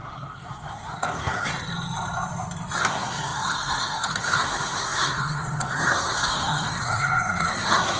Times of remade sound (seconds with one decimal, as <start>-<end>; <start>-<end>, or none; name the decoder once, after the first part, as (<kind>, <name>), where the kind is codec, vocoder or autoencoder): 0.0-1.5 (codec, SNAC); 2.9-8.0